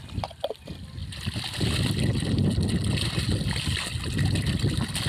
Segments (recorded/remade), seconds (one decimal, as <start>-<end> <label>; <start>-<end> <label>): 0.0-5.1 recorded